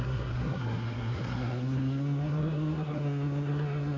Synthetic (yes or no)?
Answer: yes